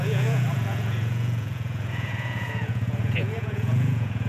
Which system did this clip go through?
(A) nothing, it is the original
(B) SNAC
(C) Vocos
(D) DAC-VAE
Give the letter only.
C